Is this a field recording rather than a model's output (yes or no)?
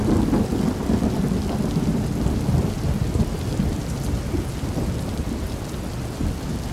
yes